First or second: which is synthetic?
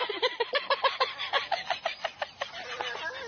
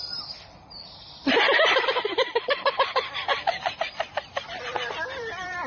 second